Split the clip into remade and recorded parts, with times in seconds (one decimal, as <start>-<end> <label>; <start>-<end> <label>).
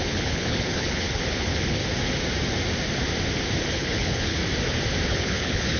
0.0-1.8 remade; 1.8-3.7 recorded; 3.7-4.4 remade; 4.4-5.1 recorded; 5.1-5.8 remade